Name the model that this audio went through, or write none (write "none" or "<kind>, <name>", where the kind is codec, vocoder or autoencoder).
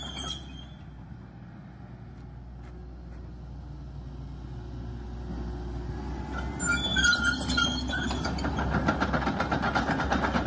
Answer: none